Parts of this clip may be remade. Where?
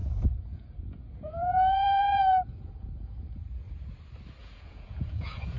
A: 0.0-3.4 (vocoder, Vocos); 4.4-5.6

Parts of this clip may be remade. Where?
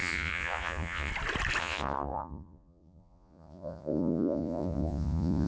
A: 0.0-1.1 (vocoder, Vocos); 1.6-5.5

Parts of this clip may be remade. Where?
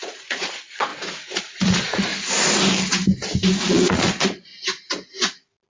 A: 0.0-0.9 (vocoder, Vocos); 1.4-2.1; 3.7-4.5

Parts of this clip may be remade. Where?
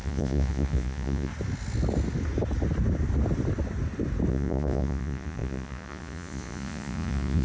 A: 0.0-1.3 (vocoder, Vocos); 4.3-7.4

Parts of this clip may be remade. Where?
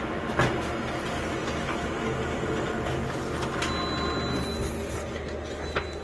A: none